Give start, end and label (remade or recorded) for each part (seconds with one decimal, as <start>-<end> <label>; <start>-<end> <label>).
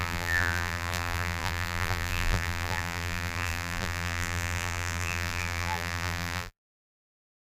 0.0-7.5 remade